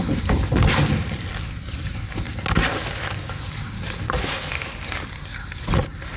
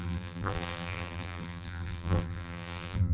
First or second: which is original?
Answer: first